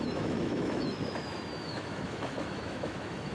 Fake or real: fake